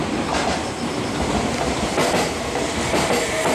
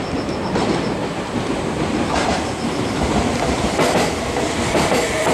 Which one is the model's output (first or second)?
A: second